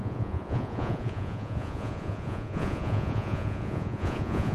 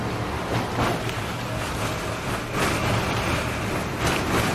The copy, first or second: first